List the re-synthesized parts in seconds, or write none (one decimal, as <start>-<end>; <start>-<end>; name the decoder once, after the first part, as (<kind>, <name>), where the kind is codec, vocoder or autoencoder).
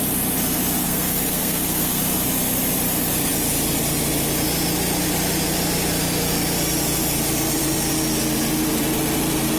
0.8-2.0 (codec, SNAC)